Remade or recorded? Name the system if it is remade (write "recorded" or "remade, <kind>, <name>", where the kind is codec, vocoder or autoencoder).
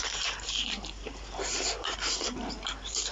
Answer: remade, vocoder, BigVGAN v2